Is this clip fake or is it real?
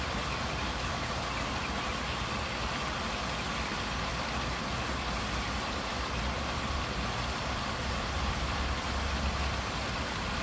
real